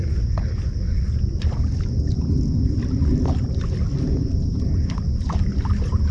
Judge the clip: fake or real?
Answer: real